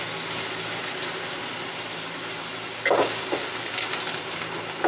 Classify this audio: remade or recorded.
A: recorded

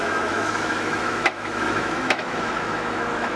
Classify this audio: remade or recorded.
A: remade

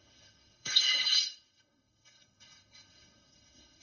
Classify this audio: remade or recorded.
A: remade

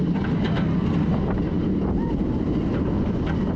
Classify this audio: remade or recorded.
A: recorded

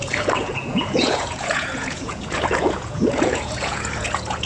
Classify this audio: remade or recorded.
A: remade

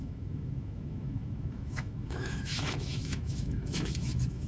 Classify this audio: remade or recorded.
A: remade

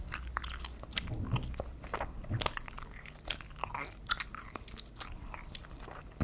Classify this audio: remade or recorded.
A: recorded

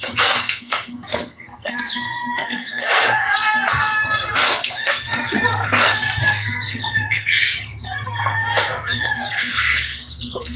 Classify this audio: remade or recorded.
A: remade